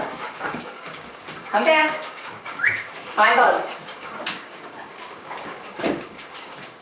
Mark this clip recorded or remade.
remade